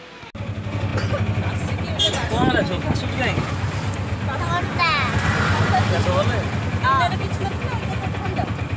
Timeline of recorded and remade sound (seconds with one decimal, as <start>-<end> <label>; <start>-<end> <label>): 0.0-8.8 recorded

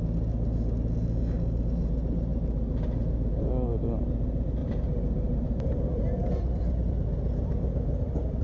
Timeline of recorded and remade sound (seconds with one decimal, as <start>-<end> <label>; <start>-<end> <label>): 0.0-4.6 recorded; 4.6-6.8 remade; 6.8-8.4 recorded

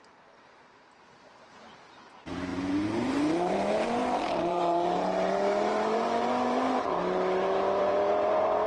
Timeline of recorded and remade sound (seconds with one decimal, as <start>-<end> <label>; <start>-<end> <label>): 0.0-8.7 remade

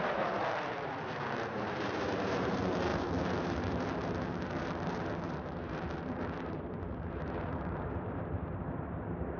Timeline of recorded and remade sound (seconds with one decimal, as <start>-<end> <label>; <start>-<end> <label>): 0.0-0.4 remade; 0.4-1.5 recorded; 1.5-9.4 remade